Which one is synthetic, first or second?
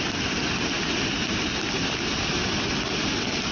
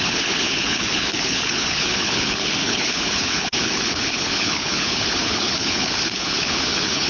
second